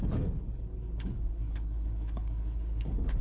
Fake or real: fake